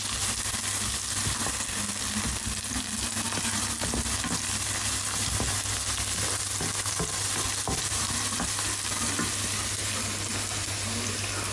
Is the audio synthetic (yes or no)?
no